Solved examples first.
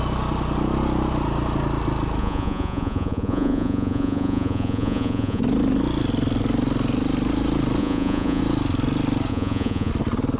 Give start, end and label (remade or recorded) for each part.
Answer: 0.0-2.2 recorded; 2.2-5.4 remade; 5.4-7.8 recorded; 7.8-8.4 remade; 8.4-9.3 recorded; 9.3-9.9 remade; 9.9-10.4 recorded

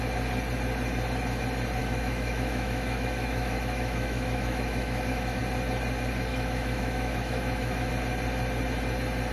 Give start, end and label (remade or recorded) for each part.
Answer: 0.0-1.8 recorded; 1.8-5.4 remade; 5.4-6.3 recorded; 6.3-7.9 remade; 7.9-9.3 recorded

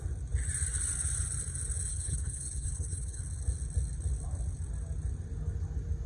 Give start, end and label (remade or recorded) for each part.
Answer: 0.0-1.9 recorded; 1.9-3.2 remade; 3.2-6.1 recorded

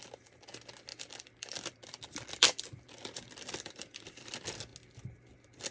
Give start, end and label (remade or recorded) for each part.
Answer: 0.0-0.9 recorded; 0.9-4.3 remade; 4.3-5.7 recorded

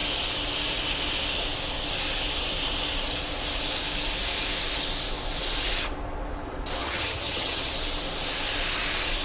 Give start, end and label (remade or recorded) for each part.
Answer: 0.0-6.8 recorded; 6.8-7.7 remade; 7.7-9.2 recorded